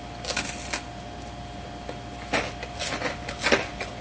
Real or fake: real